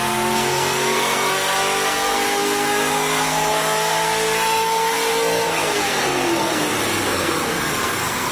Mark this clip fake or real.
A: fake